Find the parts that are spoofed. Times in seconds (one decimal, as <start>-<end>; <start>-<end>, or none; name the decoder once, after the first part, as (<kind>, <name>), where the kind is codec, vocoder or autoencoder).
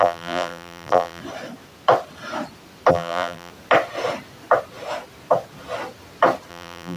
0.0-1.2 (vocoder, BigVGAN v2); 2.9-3.5; 6.5-7.0